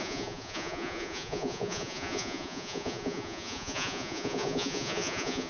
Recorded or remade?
remade